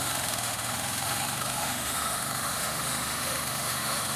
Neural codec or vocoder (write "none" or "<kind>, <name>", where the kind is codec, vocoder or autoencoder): autoencoder, DAC-VAE